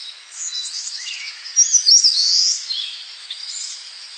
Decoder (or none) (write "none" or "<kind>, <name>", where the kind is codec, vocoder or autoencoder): autoencoder, DAC-VAE